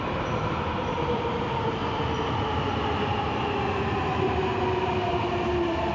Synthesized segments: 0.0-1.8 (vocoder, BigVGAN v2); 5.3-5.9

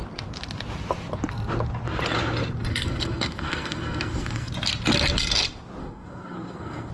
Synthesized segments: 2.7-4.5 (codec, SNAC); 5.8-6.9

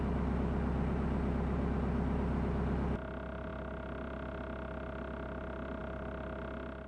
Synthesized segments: none

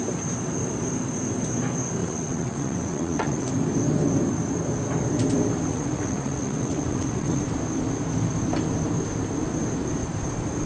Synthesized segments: 2.0-3.5 (vocoder, WaveNeXt); 5.7-7.4

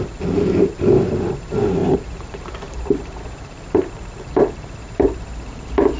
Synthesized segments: 0.0-6.0 (vocoder, BigVGAN v2)

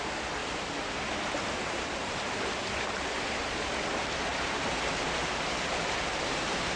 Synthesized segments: 4.3-6.8 (vocoder, BigVGAN v2)

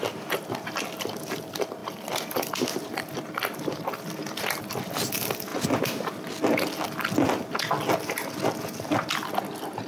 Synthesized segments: 1.8-4.6 (vocoder, BigVGAN v2)